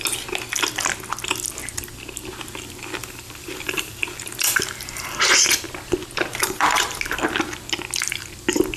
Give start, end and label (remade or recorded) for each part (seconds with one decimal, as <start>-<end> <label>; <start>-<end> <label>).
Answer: 0.0-3.0 recorded; 3.0-5.2 remade; 5.2-6.3 recorded; 6.3-7.0 remade; 7.0-8.8 recorded